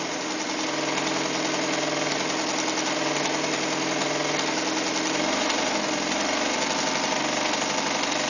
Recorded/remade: recorded